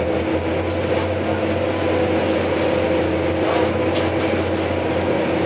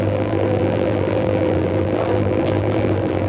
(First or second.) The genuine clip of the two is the first